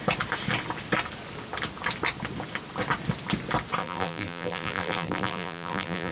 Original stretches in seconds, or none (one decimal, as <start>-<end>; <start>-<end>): 0.0-3.8